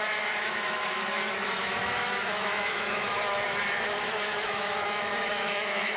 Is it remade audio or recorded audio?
remade